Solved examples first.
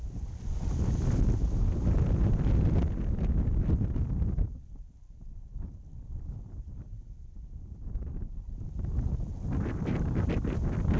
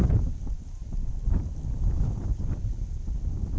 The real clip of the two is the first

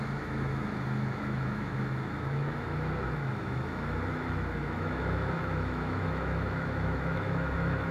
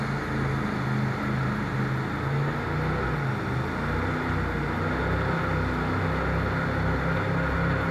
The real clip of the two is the second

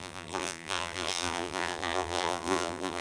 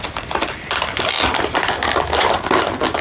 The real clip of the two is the second